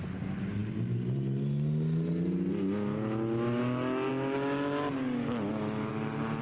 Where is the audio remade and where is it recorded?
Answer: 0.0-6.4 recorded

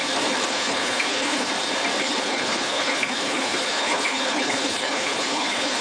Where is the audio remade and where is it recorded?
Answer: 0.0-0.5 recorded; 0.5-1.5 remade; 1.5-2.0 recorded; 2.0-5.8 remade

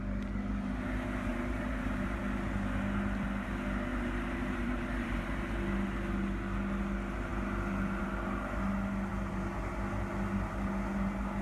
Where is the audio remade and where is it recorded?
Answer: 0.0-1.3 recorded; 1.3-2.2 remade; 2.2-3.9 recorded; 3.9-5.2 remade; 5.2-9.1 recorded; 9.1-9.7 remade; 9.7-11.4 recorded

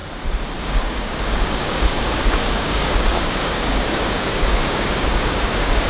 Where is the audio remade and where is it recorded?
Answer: 0.0-0.6 recorded; 0.6-5.9 remade

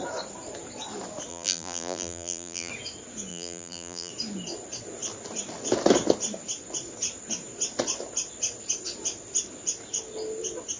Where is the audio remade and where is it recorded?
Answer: 0.0-1.3 recorded; 1.3-2.7 remade; 2.7-3.3 recorded; 3.3-4.1 remade; 4.1-10.8 recorded

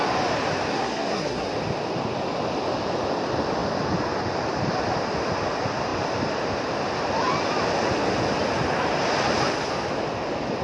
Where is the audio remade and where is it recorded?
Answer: 0.0-0.7 recorded; 0.7-1.5 remade; 1.5-10.6 recorded

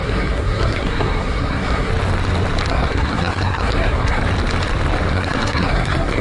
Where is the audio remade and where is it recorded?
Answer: 0.0-1.9 remade; 1.9-2.7 recorded; 2.7-4.2 remade; 4.2-5.1 recorded; 5.1-6.2 remade

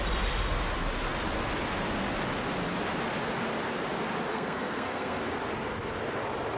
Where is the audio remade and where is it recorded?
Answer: 0.0-4.3 recorded; 4.3-5.2 remade; 5.2-6.6 recorded